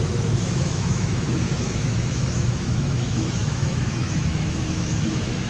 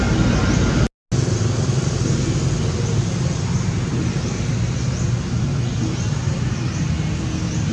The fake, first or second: first